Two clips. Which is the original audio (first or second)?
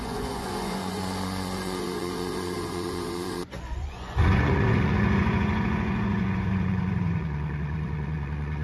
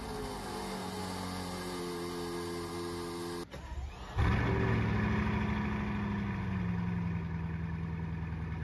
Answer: second